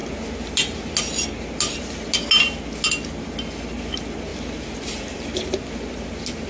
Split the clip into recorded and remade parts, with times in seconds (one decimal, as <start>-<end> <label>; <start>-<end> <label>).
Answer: 0.0-4.3 recorded; 4.3-5.6 remade; 5.6-6.5 recorded